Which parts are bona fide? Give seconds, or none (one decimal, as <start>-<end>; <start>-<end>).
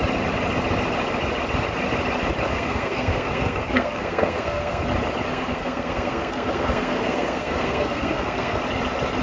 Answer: 0.0-2.5; 4.8-5.3; 8.6-9.2